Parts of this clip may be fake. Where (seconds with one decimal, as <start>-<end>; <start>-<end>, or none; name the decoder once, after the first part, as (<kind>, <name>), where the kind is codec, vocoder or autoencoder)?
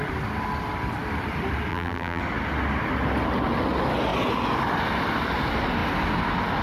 1.7-2.2 (vocoder, BigVGAN v2)